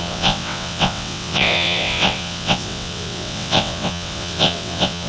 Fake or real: fake